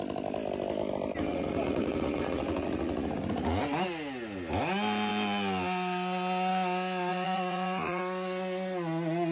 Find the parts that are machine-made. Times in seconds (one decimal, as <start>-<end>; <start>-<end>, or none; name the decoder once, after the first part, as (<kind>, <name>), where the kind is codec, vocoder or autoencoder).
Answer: 1.3-3.6 (vocoder, Vocos); 7.1-8.0